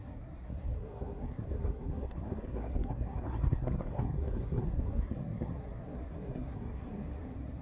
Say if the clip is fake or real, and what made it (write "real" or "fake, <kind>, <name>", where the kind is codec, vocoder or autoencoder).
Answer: fake, codec, SNAC